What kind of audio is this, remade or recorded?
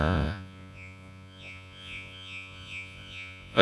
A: remade